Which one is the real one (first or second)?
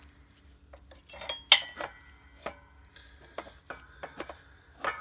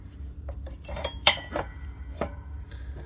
first